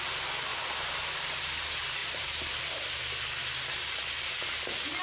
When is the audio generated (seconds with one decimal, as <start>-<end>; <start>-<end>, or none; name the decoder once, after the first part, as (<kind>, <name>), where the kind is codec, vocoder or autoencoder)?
0.5-1.4 (vocoder, BigVGAN v2); 2.0-2.6